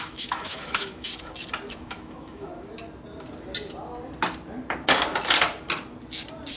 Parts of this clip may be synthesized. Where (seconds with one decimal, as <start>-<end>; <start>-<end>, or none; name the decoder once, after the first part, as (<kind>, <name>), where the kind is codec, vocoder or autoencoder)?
0.0-1.1 (autoencoder, DAC-VAE); 1.7-2.5